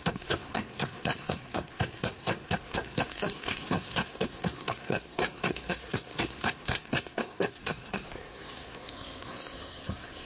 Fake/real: fake